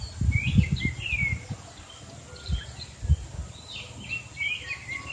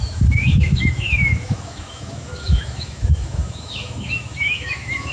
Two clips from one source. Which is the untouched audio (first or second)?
first